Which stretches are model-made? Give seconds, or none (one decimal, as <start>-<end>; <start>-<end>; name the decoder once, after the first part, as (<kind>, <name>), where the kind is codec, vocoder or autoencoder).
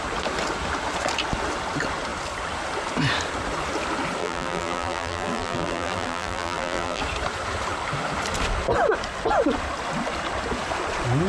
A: 4.2-7.0 (vocoder, BigVGAN v2)